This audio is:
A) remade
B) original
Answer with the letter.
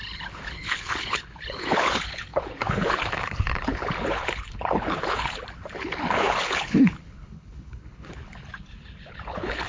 A